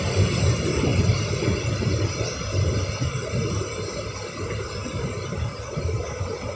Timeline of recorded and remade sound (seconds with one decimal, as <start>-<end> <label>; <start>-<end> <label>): 0.0-6.6 recorded